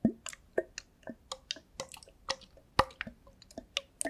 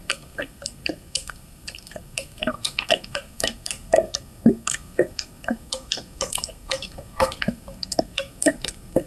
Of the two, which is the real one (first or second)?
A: first